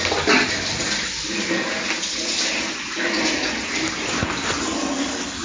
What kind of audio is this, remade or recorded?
recorded